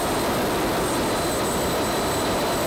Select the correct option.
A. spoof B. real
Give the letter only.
A